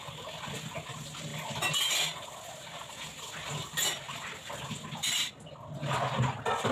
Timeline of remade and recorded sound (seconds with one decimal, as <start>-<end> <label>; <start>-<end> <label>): 0.0-6.7 recorded